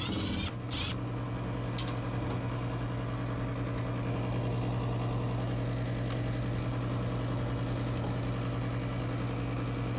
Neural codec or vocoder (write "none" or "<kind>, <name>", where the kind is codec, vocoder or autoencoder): none